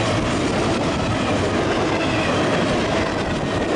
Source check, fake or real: real